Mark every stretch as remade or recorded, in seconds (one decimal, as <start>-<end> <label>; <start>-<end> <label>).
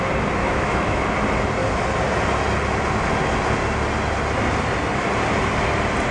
0.0-0.4 recorded; 0.4-1.1 remade; 1.1-6.1 recorded